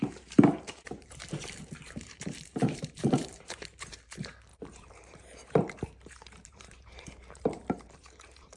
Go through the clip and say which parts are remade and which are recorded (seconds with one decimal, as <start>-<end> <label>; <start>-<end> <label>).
0.0-8.6 remade